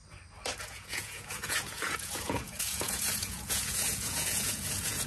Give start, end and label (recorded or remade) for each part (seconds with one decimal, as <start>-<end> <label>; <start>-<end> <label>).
0.0-0.6 recorded; 0.6-5.1 remade